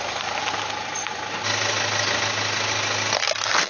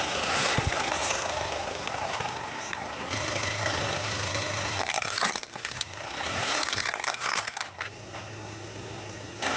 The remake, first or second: second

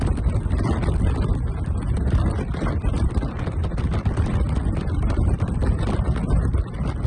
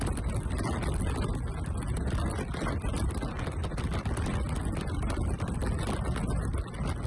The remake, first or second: first